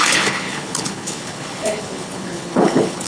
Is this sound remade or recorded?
remade